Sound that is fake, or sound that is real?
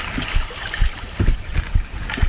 real